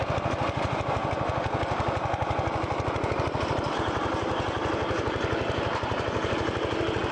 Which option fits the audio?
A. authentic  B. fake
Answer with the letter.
A